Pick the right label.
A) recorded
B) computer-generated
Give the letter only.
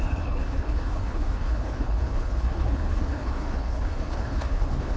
B